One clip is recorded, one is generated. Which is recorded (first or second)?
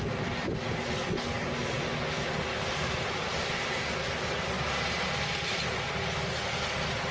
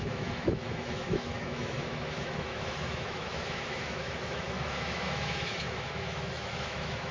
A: first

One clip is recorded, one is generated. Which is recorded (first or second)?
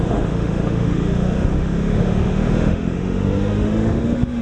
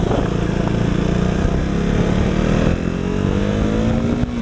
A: second